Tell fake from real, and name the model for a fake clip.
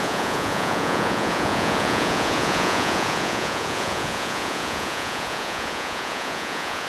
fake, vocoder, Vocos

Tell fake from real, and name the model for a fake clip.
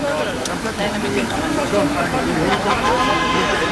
fake, autoencoder, DAC-VAE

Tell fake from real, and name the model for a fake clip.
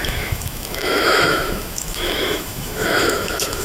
fake, autoencoder, DAC-VAE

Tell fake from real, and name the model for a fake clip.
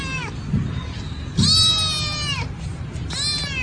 real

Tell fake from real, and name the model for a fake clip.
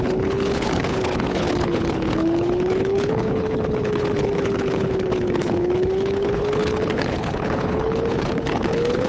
fake, codec, HILCodec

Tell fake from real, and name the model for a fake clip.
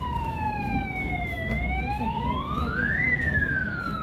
fake, codec, DAC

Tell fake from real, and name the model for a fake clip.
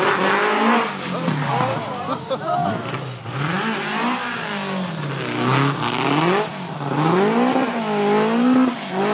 real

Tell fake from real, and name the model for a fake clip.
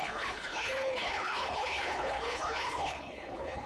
fake, codec, HILCodec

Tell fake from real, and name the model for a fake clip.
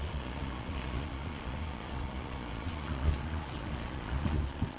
fake, vocoder, Vocos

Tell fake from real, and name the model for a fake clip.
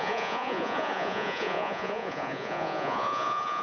fake, vocoder, Vocos